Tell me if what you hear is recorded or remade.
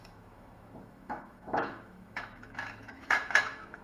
remade